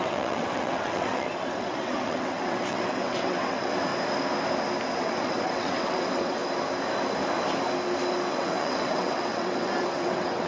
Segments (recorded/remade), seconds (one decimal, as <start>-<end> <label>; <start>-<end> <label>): 0.0-3.9 remade; 3.9-5.0 recorded; 5.0-6.4 remade; 6.4-8.3 recorded; 8.3-10.5 remade